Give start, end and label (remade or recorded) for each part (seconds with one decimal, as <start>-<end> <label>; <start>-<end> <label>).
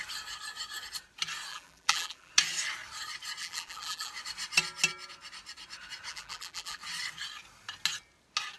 0.0-1.5 recorded; 1.5-2.3 remade; 2.3-3.4 recorded; 3.4-4.1 remade; 4.1-6.1 recorded; 6.1-6.8 remade; 6.8-8.6 recorded